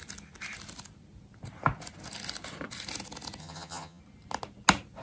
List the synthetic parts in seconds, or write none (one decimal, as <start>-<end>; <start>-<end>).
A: 3.4-4.0